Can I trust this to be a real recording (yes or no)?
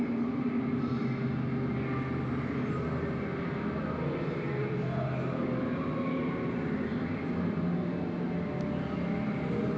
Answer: yes